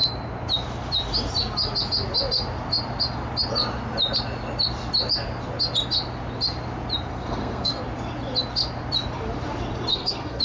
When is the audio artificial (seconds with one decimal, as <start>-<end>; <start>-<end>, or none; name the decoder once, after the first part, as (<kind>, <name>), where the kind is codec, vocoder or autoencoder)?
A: 7.1-7.8 (codec, SNAC); 9.9-10.4